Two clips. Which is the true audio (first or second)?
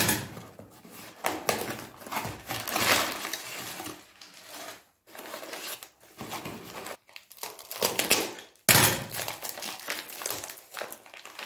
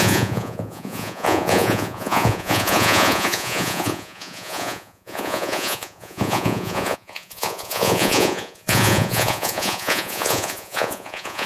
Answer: first